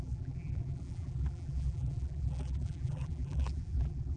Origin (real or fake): fake